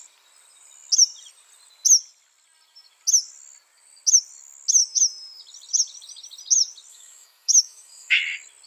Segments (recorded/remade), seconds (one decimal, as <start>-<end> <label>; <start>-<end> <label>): 0.0-6.9 recorded; 6.9-8.2 remade; 8.2-8.7 recorded